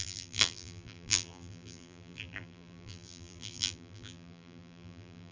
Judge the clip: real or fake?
fake